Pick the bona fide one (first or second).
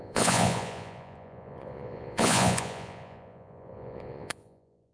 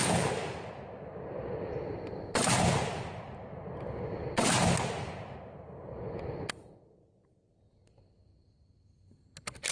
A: second